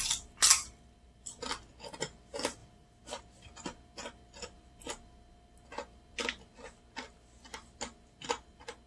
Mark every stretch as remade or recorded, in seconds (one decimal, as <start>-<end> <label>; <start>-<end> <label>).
0.0-2.6 recorded; 2.6-3.2 remade; 3.2-8.9 recorded

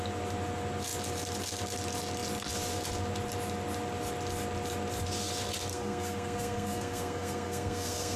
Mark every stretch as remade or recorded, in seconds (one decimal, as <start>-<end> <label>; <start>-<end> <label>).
0.0-5.7 recorded; 5.7-8.2 remade

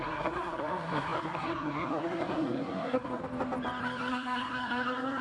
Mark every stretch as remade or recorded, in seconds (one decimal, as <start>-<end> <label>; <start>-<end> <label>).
0.0-3.2 remade; 3.2-4.1 recorded; 4.1-5.2 remade

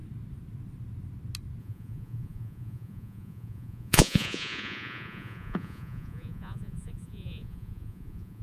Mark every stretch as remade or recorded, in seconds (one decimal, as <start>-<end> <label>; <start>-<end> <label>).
0.0-1.6 recorded; 1.6-8.4 remade

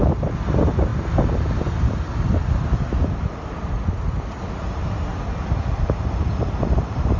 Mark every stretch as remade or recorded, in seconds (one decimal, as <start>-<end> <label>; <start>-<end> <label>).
0.0-7.2 recorded

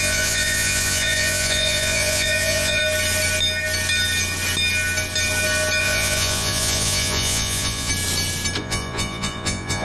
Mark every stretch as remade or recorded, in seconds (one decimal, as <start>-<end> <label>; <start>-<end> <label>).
0.0-2.8 remade; 2.8-5.8 recorded; 5.8-7.9 remade; 7.9-8.6 recorded; 8.6-9.8 remade

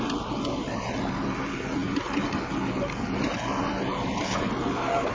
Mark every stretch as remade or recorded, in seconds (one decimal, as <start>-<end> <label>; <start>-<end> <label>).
0.0-5.1 recorded

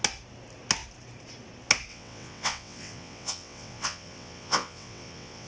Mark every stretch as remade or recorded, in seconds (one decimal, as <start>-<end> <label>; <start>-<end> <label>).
0.0-1.9 recorded; 1.9-5.5 remade